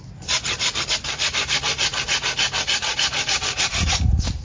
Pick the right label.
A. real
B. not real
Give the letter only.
A